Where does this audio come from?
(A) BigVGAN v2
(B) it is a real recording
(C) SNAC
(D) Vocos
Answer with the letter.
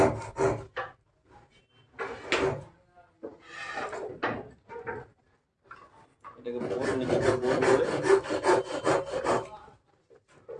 B